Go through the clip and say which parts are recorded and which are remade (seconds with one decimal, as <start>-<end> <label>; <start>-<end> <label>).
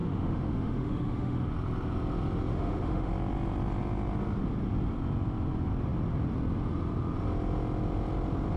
0.0-1.5 remade; 1.5-2.5 recorded; 2.5-3.1 remade; 3.1-8.6 recorded